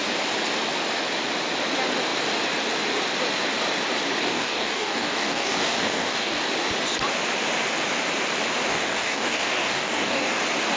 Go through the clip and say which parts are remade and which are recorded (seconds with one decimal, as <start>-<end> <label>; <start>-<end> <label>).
0.0-4.2 recorded; 4.2-6.4 remade; 6.4-8.7 recorded; 8.7-10.4 remade; 10.4-10.8 recorded